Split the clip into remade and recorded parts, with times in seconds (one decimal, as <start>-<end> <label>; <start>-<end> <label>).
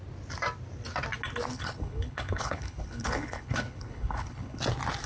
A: 0.0-1.5 recorded; 1.5-4.6 remade; 4.6-5.1 recorded